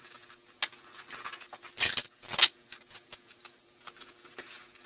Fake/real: real